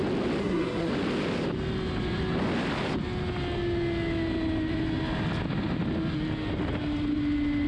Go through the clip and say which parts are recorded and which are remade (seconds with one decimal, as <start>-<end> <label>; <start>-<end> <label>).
0.0-0.4 recorded; 0.4-0.9 remade; 0.9-7.7 recorded